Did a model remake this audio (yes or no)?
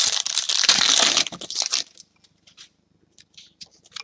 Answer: no